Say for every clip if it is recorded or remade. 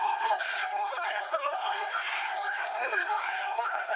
remade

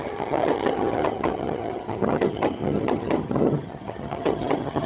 remade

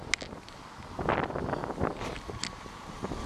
recorded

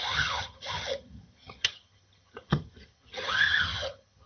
remade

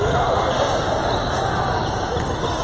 recorded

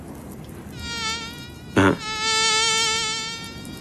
recorded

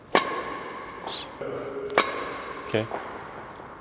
recorded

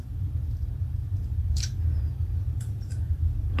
remade